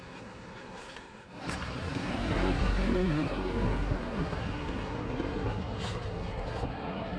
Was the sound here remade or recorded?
remade